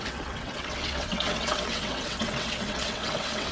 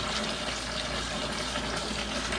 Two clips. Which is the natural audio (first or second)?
second